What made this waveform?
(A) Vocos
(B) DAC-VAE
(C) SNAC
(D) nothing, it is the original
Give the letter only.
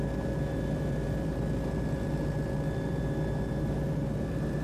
D